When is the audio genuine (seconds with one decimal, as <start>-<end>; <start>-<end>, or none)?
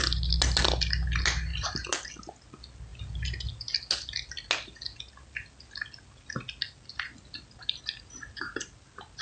0.0-9.2